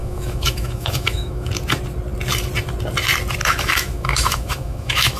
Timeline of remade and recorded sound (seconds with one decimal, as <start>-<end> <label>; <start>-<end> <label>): 0.0-1.5 remade; 1.5-3.4 recorded; 3.4-5.2 remade